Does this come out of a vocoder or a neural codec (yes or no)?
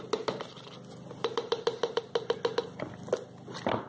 no